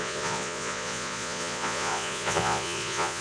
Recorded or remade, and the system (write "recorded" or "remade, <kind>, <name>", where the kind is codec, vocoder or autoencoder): remade, vocoder, Vocos